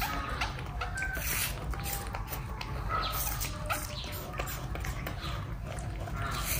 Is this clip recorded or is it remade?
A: recorded